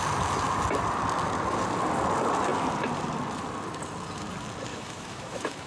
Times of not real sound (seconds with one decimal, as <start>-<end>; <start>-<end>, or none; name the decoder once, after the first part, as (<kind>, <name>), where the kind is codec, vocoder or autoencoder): 4.7-5.7 (autoencoder, DAC-VAE)